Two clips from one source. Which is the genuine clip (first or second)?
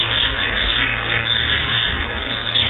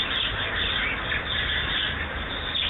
second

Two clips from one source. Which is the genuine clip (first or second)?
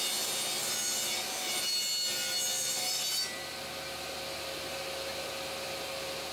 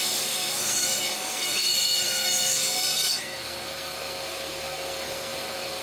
first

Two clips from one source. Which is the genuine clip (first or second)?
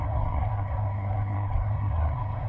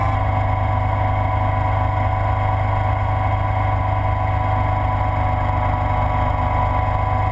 second